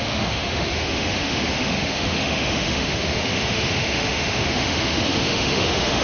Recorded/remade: remade